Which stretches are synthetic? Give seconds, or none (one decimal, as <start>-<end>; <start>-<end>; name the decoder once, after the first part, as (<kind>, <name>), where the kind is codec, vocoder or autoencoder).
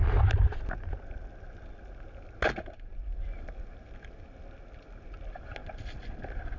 none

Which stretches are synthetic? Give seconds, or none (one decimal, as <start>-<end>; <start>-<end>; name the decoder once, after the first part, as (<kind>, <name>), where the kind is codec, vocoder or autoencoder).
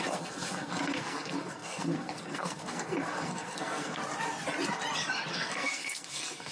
0.0-4.0 (codec, SNAC); 5.3-6.5